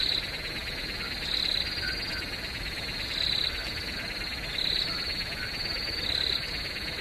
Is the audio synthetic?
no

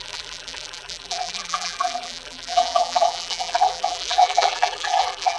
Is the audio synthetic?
yes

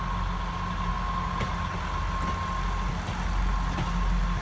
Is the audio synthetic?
no